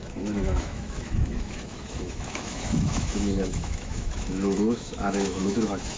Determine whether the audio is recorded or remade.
remade